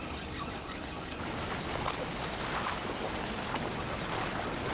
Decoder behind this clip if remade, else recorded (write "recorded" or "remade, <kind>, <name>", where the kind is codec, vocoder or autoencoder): recorded